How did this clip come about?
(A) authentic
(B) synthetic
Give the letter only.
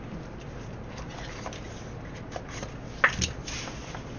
A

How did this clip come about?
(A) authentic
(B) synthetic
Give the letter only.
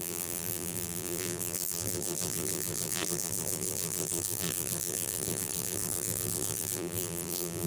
B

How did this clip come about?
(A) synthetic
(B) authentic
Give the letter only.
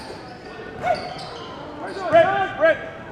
B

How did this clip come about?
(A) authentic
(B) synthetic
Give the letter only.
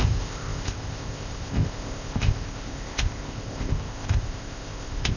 B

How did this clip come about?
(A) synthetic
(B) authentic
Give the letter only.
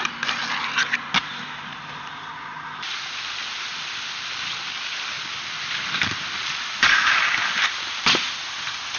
B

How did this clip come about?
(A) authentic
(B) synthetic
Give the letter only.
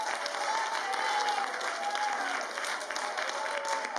A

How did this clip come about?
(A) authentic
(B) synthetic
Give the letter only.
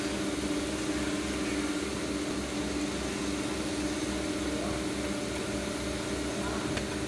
A